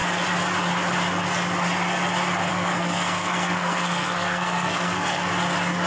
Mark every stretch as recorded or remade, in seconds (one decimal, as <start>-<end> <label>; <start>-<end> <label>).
0.0-2.5 recorded; 2.5-5.3 remade; 5.3-5.9 recorded